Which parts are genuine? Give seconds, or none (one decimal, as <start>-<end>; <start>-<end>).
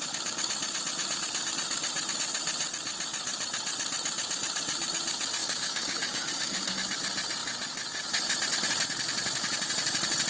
0.0-5.4; 6.7-10.3